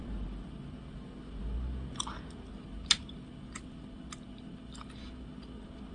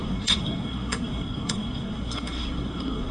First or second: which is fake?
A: second